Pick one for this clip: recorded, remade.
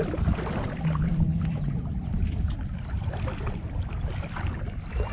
remade